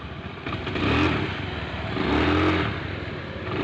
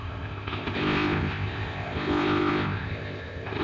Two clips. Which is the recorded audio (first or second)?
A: first